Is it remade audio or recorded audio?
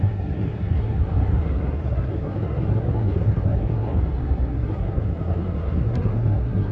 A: remade